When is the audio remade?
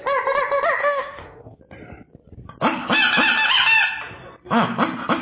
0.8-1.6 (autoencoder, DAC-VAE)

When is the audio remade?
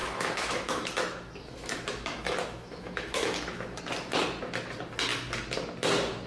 0.0-3.8 (autoencoder, DAC-VAE)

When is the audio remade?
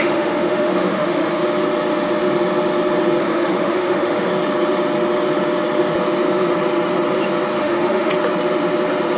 0.0-1.4 (autoencoder, DAC-VAE); 3.2-4.3; 7.6-8.1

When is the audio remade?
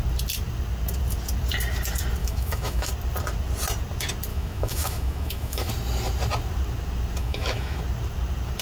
2.2-2.9 (autoencoder, DAC-VAE); 4.3-5.7; 7.2-7.8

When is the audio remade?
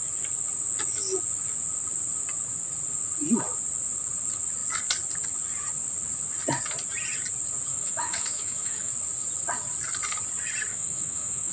7.7-8.9 (autoencoder, DAC-VAE); 10.7-11.5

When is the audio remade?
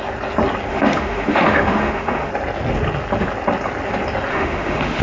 0.7-2.3 (autoencoder, DAC-VAE); 4.3-5.0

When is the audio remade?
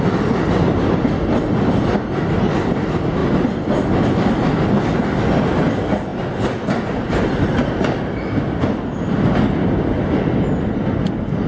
none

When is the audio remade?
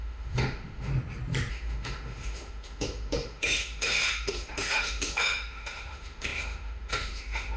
0.0-0.9 (autoencoder, DAC-VAE); 1.5-7.6